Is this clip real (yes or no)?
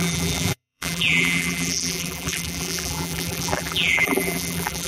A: no